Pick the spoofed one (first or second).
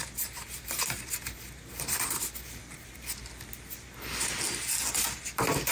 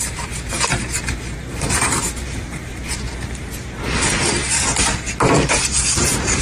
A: second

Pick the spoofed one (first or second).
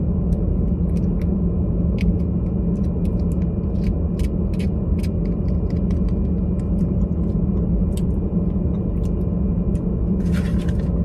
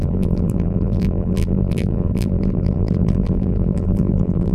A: second